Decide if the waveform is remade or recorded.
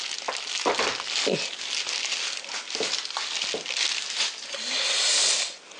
recorded